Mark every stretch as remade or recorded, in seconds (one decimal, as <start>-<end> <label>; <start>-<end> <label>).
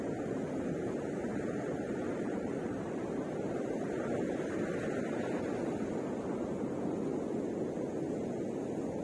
0.0-1.3 recorded; 1.3-3.0 remade; 3.0-9.0 recorded